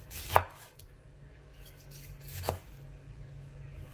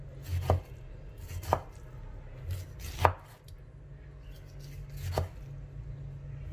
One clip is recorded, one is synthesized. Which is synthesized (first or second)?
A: first